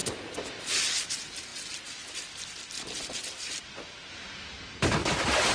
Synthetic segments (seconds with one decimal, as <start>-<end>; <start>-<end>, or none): none